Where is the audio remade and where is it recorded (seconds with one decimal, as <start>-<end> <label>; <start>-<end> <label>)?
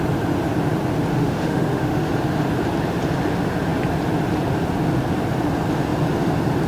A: 0.0-1.1 recorded; 1.1-2.1 remade; 2.1-6.7 recorded